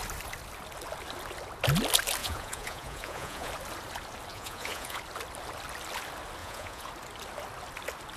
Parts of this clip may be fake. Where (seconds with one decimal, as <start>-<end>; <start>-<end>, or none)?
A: 2.2-3.5; 4.3-5.0; 6.4-6.9